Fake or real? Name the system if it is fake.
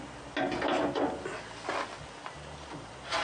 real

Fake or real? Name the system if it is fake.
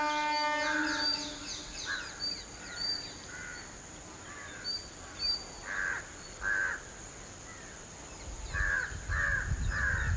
real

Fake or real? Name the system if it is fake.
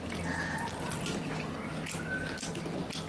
real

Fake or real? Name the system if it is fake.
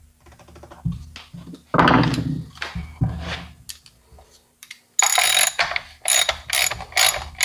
real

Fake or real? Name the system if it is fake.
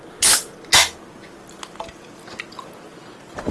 real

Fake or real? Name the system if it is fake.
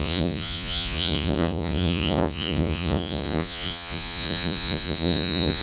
fake, vocoder, Vocos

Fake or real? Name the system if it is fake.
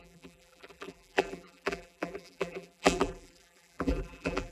fake, vocoder, BigVGAN v2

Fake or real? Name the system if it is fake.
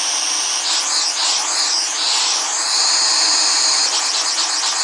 real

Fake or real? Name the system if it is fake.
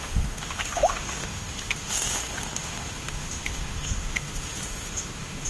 fake, autoencoder, DAC-VAE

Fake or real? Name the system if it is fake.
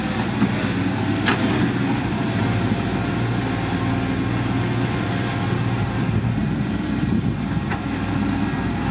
real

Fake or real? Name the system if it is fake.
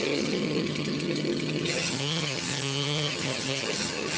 fake, vocoder, HiFi-GAN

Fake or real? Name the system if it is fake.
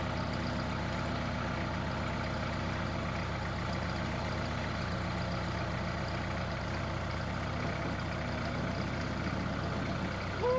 real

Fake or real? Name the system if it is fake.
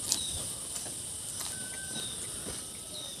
fake, vocoder, BigVGAN v2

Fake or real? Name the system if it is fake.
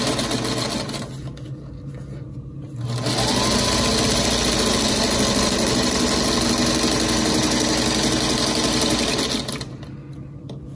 real